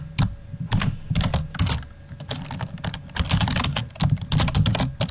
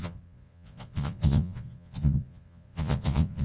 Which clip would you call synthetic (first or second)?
second